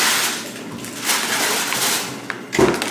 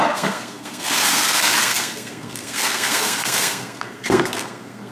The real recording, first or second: first